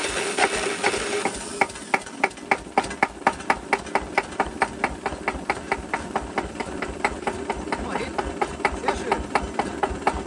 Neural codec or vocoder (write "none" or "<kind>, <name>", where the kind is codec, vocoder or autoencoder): none